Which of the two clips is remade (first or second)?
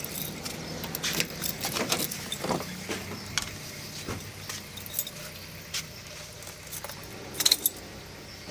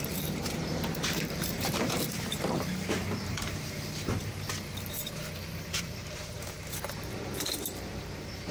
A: second